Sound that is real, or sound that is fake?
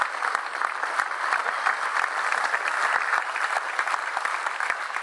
real